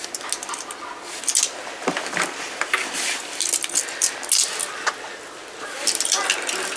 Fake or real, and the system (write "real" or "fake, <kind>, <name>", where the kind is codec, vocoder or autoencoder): real